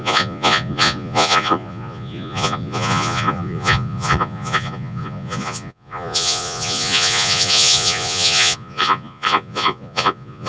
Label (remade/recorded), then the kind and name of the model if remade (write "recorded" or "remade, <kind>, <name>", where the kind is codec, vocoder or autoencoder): remade, vocoder, Vocos